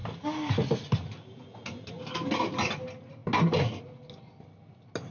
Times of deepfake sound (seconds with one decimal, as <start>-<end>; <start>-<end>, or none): none